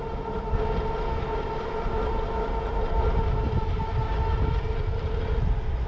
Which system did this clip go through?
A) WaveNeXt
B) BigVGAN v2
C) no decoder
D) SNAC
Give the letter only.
C